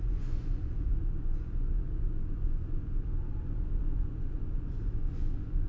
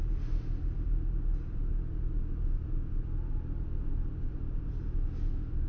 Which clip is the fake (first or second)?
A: first